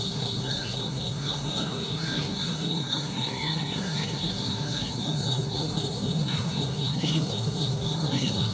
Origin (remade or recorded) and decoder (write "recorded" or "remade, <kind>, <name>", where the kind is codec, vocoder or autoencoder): remade, codec, SNAC